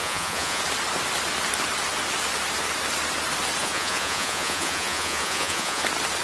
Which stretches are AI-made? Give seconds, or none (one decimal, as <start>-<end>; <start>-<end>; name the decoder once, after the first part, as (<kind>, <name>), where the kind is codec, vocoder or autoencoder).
0.0-0.6 (vocoder, Vocos); 3.6-5.8